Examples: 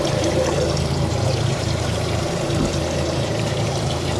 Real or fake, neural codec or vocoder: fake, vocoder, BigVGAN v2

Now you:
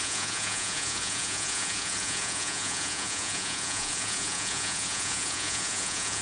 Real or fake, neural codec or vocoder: fake, vocoder, Vocos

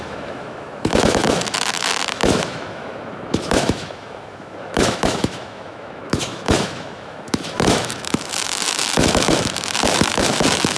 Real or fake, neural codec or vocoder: fake, autoencoder, DAC-VAE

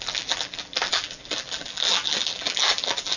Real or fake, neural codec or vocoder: fake, vocoder, BigVGAN v2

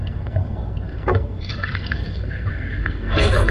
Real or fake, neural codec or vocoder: fake, codec, SNAC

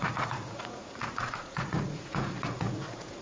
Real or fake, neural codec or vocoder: fake, vocoder, Vocos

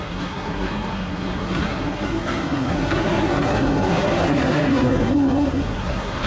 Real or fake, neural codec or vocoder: fake, codec, SNAC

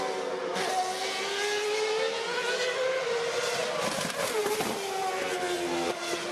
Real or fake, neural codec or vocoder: real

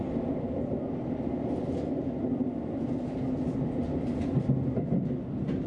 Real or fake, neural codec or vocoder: real